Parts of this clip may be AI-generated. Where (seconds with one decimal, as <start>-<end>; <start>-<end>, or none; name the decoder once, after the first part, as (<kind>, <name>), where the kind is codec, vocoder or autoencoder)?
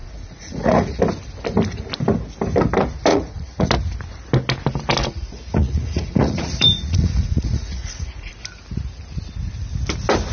0.0-1.0 (vocoder, Vocos); 3.1-3.7; 5.0-8.3